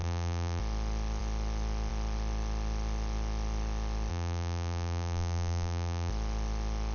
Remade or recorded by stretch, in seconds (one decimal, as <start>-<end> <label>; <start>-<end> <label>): 0.0-0.6 remade; 0.6-4.1 recorded; 4.1-6.1 remade; 6.1-6.9 recorded